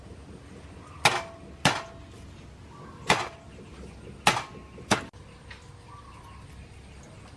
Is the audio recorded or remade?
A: recorded